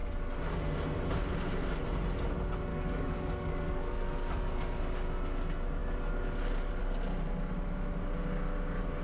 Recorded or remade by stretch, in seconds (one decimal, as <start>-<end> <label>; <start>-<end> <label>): 0.0-2.7 recorded; 2.7-4.8 remade; 4.8-9.0 recorded